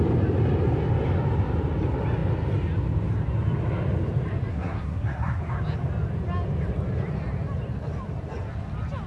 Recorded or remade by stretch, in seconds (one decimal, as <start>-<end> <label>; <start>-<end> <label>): 0.0-4.5 recorded; 4.5-5.4 remade; 5.4-9.1 recorded